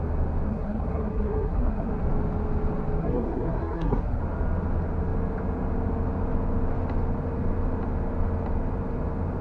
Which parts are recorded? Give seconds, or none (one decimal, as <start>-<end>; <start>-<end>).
0.0-0.5; 1.9-3.0; 4.2-9.4